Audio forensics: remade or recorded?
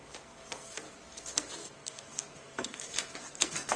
remade